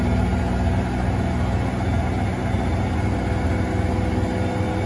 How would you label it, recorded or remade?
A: recorded